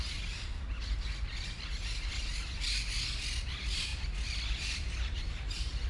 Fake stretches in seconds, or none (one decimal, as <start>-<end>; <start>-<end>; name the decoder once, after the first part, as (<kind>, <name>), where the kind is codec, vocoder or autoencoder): none